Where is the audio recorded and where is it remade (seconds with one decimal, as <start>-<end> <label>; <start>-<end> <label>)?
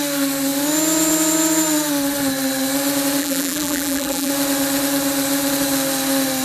0.0-3.2 recorded; 3.2-4.3 remade; 4.3-6.4 recorded